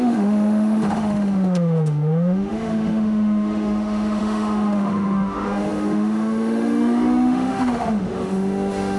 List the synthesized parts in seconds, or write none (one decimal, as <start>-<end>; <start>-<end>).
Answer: 0.0-9.0